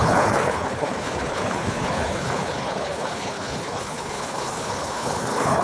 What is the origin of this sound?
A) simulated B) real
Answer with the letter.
A